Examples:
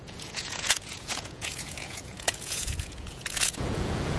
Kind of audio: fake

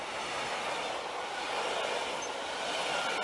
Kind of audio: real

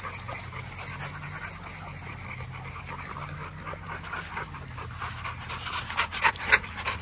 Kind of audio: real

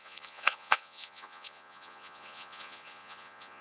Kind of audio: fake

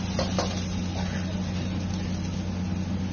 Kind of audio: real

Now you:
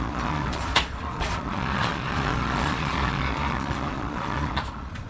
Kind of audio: fake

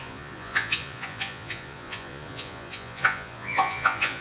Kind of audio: fake